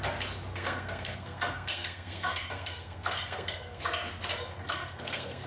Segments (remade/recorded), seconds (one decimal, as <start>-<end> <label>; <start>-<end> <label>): 0.0-0.5 recorded; 0.5-3.8 remade; 3.8-4.6 recorded; 4.6-5.5 remade